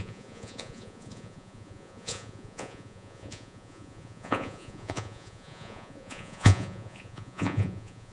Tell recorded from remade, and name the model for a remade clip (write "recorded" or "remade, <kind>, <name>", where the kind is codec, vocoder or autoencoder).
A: remade, vocoder, Vocos